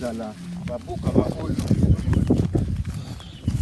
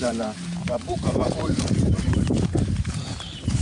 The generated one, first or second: second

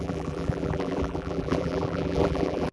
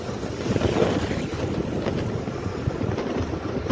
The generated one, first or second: first